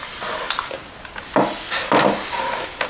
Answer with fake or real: real